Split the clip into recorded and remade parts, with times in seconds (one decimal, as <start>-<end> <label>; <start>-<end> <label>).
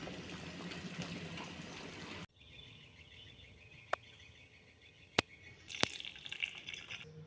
0.0-2.3 recorded; 2.3-5.4 remade; 5.4-7.3 recorded